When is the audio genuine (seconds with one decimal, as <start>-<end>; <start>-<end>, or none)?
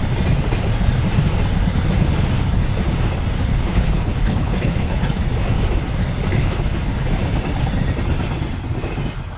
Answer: 0.0-3.5; 5.2-6.4; 7.1-9.4